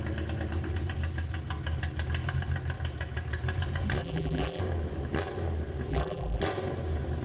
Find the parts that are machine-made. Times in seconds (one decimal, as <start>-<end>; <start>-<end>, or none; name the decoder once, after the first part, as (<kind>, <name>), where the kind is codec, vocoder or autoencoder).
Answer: 4.0-4.6 (vocoder, BigVGAN v2); 5.9-6.4